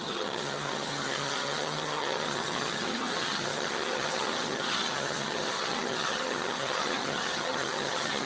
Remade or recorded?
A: remade